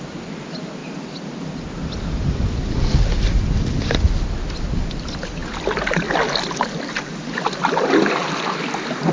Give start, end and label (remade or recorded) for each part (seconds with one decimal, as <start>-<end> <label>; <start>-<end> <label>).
0.0-9.1 recorded